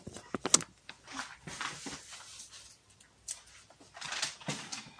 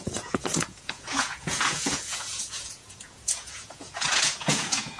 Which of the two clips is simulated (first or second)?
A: second